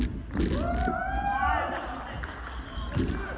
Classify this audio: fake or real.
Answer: real